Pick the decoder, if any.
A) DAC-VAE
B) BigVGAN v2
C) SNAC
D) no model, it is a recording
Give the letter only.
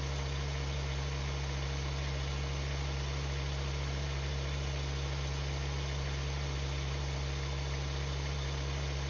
D